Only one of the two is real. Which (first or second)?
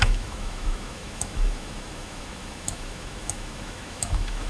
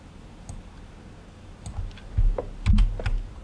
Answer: second